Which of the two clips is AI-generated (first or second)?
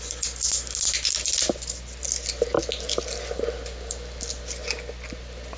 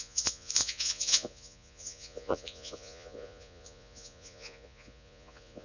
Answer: second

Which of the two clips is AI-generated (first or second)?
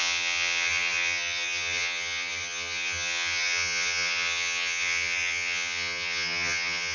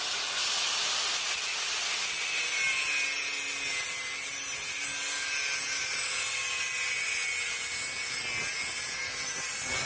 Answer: first